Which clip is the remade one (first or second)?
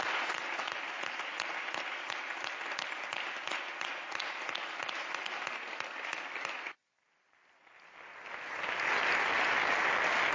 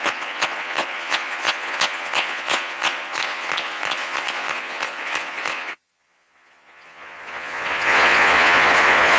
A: second